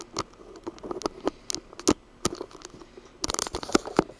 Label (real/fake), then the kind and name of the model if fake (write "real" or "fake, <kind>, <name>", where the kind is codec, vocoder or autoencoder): real